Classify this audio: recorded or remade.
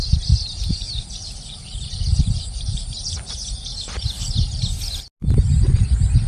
recorded